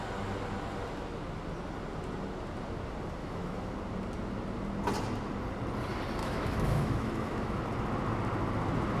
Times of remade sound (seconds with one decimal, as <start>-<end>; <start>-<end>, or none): 3.2-3.7; 6.2-7.6